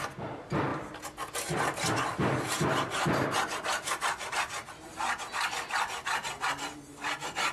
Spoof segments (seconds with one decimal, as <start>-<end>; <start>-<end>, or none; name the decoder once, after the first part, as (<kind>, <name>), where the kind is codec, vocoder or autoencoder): none